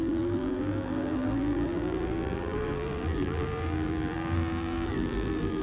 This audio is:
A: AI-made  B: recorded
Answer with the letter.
A